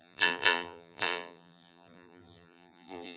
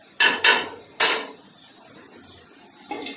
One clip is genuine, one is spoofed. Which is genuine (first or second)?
second